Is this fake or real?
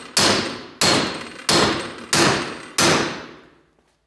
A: real